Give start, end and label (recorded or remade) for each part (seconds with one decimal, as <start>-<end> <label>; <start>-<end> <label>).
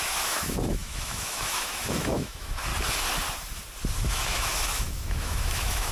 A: 0.0-2.7 remade; 2.7-4.1 recorded; 4.1-5.9 remade